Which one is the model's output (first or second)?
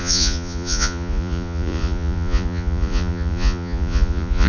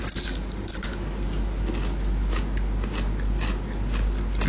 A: first